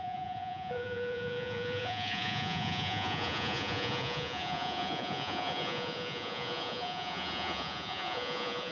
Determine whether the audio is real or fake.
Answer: fake